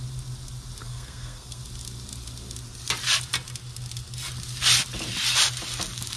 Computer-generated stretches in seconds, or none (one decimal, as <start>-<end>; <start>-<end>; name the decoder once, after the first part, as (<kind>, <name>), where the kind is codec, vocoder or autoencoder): 0.8-1.6 (codec, SNAC)